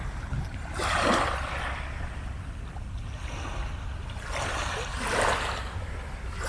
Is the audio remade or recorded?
recorded